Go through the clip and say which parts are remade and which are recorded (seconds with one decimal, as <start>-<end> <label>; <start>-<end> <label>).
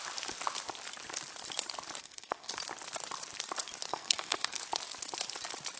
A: 0.0-2.0 recorded; 2.0-2.5 remade; 2.5-3.9 recorded; 3.9-4.6 remade; 4.6-5.8 recorded